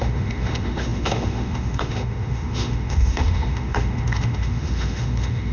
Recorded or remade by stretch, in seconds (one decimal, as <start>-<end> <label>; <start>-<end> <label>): 0.0-5.5 remade